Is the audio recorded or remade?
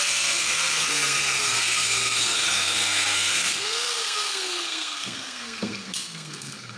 remade